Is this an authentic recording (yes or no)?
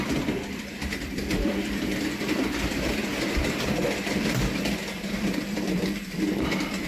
no